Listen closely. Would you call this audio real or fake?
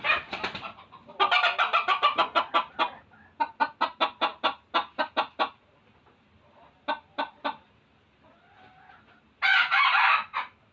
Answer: real